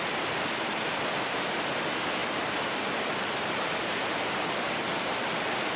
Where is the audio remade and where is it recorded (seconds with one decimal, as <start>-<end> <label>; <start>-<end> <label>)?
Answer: 0.0-5.8 recorded